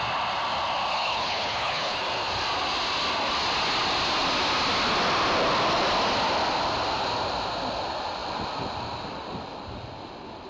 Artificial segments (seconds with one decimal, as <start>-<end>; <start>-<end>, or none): 0.9-2.0